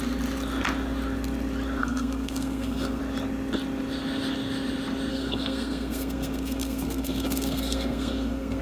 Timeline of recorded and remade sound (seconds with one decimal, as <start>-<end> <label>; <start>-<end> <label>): 0.0-1.8 recorded; 1.8-3.0 remade; 3.0-5.1 recorded; 5.1-8.6 remade